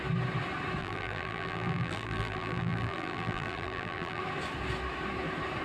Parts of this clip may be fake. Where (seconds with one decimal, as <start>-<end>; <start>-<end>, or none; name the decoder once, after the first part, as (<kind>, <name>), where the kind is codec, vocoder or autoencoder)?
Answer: 0.8-4.2 (vocoder, BigVGAN v2)